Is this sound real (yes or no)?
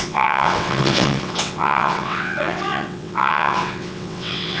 no